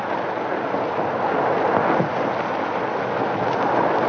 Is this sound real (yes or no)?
yes